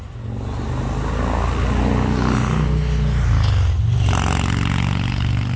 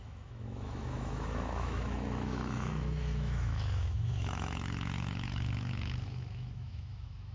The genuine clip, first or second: first